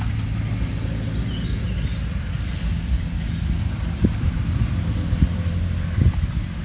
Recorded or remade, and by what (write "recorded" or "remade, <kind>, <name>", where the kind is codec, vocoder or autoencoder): recorded